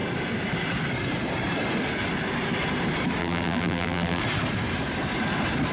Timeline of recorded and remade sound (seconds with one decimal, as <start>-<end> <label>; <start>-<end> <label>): 0.0-3.2 recorded; 3.2-4.2 remade; 4.2-5.7 recorded